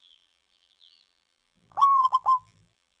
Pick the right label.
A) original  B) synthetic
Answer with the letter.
B